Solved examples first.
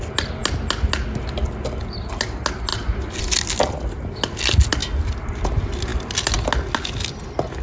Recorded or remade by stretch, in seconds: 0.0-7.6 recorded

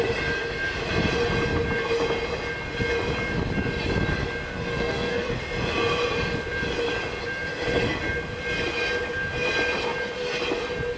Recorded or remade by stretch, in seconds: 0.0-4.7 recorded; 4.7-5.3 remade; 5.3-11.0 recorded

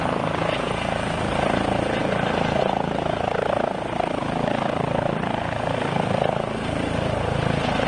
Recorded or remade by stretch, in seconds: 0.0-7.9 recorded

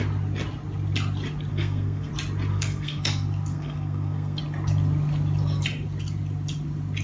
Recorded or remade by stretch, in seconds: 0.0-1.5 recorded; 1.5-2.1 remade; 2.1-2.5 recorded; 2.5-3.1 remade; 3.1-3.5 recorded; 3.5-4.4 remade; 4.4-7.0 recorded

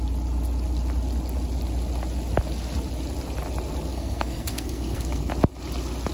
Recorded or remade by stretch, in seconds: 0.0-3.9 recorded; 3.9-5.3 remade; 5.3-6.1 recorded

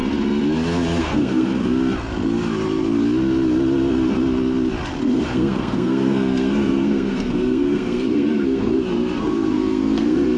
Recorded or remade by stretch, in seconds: 0.0-1.0 recorded; 1.0-1.5 remade; 1.5-5.0 recorded; 5.0-10.4 remade

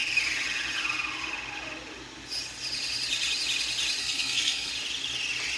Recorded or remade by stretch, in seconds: 0.0-4.0 recorded; 4.0-4.7 remade; 4.7-5.6 recorded

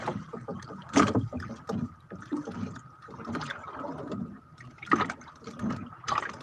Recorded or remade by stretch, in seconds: 0.0-6.4 recorded